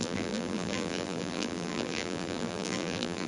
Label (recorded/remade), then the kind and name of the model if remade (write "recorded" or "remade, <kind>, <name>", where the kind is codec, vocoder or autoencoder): remade, vocoder, BigVGAN v2